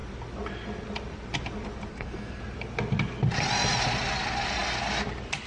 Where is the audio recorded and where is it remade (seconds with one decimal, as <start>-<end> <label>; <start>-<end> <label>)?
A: 0.0-1.9 recorded; 1.9-2.4 remade; 2.4-5.5 recorded